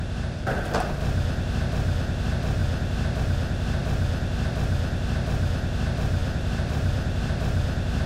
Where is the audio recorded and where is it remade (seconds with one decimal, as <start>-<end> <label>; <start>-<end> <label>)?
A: 0.0-6.2 recorded; 6.2-8.1 remade